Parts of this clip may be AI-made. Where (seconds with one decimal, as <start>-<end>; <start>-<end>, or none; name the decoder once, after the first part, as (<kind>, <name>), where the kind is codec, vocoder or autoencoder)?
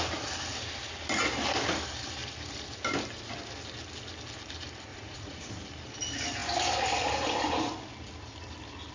4.9-5.5 (vocoder, Vocos)